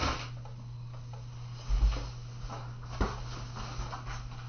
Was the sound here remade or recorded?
recorded